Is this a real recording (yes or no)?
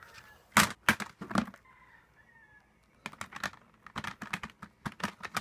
yes